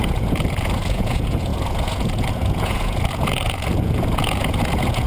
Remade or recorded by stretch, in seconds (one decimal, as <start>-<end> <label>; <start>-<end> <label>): 0.0-5.1 remade